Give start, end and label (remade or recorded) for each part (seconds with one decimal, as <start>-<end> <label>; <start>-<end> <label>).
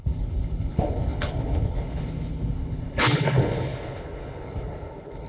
0.0-5.3 remade